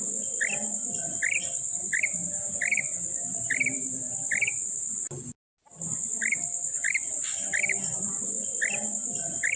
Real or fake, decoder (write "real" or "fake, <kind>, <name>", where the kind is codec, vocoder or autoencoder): real